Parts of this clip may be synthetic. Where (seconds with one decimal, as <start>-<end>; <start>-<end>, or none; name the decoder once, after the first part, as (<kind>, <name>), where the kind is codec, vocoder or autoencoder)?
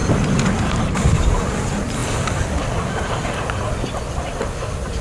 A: none